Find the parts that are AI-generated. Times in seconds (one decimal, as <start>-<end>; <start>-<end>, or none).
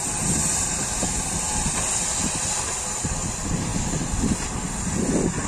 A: none